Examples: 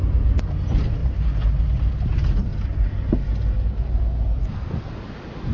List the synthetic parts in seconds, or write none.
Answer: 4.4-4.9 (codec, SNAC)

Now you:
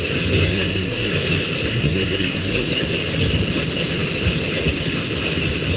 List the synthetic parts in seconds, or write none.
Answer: 0.5-1.1 (codec, SNAC); 1.7-2.7

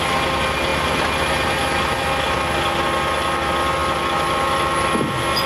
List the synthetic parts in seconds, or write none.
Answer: none

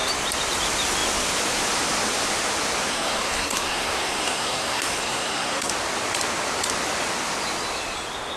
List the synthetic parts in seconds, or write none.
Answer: 2.9-5.7 (codec, SNAC)

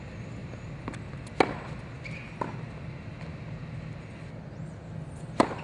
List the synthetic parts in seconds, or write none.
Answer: none

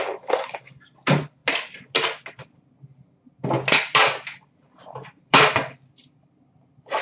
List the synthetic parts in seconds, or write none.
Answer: none

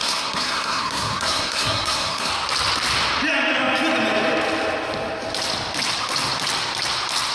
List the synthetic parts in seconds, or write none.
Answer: 0.0-2.3 (codec, SNAC)